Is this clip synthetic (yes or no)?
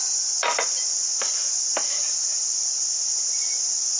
yes